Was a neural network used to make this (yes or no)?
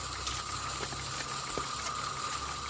no